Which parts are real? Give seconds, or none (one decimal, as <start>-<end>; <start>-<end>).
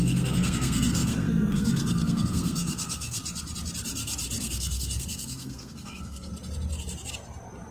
3.2-4.4; 6.3-7.7